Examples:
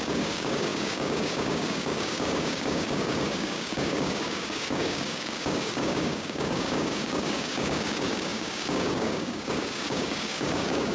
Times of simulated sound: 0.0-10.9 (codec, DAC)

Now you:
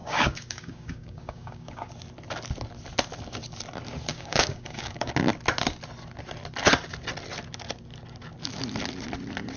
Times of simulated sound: 0.0-1.9 (codec, DAC); 4.1-5.1

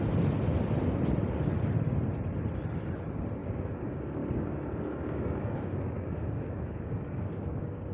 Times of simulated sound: 3.4-7.9 (codec, DAC)

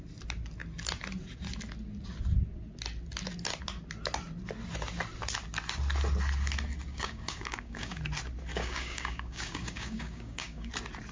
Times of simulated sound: 6.9-8.0 (codec, DAC); 8.5-10.7

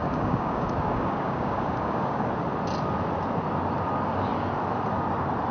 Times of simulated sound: 0.0-2.3 (codec, DAC)